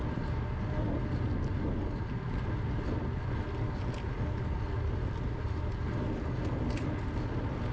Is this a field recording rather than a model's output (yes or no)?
yes